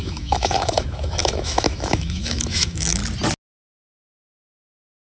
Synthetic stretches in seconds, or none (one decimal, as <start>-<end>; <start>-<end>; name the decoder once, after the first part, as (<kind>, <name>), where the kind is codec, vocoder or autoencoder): 0.0-3.0 (autoencoder, DAC-VAE)